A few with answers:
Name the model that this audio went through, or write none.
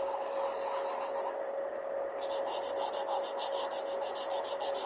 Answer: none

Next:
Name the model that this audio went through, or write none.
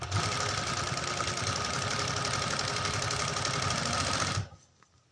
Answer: none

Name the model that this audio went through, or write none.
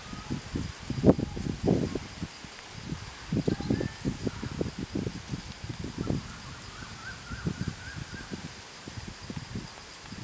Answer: none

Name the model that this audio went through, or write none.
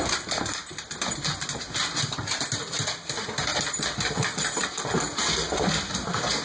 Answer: none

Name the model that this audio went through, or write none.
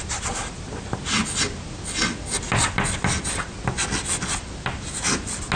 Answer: none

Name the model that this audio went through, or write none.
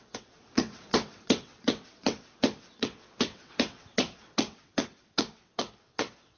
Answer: vocoder, WaveNeXt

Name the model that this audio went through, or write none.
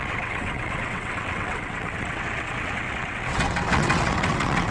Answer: vocoder, WaveNeXt